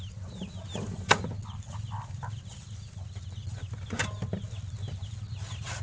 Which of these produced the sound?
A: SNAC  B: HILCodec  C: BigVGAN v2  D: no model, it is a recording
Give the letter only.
D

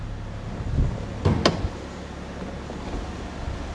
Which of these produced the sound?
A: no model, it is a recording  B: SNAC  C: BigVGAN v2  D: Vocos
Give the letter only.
A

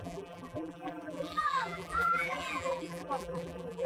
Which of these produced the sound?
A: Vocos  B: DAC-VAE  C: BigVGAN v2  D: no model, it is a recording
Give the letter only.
C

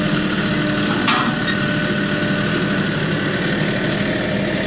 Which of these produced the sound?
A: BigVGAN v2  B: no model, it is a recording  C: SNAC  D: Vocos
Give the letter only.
B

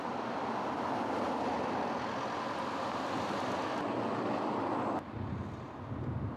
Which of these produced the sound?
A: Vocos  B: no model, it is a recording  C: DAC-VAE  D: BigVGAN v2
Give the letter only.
B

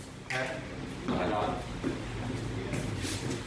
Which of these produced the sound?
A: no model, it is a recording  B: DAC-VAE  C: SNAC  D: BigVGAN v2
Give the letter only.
A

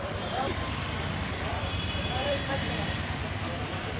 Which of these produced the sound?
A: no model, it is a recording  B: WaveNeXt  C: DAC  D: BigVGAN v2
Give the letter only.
D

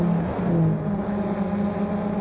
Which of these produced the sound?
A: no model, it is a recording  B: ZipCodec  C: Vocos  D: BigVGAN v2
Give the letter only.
A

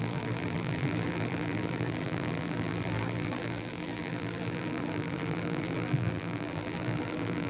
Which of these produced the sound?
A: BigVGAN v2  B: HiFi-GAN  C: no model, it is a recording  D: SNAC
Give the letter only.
A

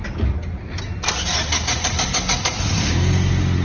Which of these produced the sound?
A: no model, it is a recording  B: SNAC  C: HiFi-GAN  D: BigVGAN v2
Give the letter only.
A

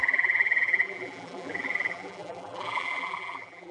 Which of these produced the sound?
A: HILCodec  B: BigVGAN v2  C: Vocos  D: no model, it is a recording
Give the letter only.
B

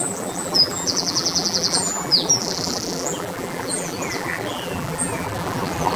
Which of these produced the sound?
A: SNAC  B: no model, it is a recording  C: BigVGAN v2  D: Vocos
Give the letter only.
C